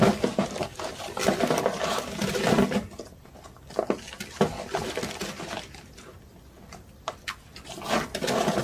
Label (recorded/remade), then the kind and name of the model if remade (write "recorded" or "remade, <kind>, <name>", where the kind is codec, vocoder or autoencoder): remade, vocoder, BigVGAN v2